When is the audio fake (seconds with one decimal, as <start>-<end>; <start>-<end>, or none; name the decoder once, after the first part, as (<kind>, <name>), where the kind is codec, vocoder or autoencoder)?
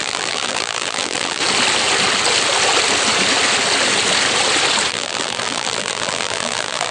0.0-1.4 (vocoder, BigVGAN v2); 4.9-6.9